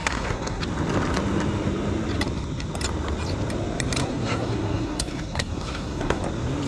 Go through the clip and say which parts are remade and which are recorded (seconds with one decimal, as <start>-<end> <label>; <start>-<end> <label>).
0.0-0.6 remade; 0.6-4.0 recorded; 4.0-6.2 remade; 6.2-6.7 recorded